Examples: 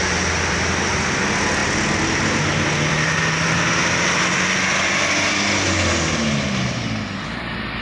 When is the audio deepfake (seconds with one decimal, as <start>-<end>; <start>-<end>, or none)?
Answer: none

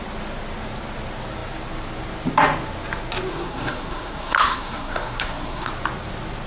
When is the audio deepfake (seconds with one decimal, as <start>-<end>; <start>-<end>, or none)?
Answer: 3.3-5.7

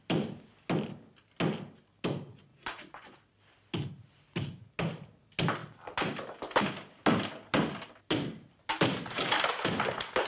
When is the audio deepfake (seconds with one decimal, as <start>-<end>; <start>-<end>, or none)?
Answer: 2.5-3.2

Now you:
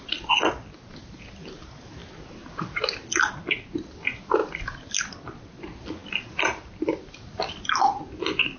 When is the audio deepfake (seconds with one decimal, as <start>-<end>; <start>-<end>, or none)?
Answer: none